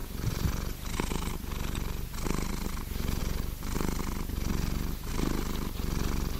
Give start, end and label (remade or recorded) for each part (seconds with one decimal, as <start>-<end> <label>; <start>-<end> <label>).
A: 0.0-6.4 recorded